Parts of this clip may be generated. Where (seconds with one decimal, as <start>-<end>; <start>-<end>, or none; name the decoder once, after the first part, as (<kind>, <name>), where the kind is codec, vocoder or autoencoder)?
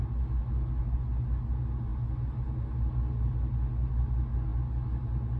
none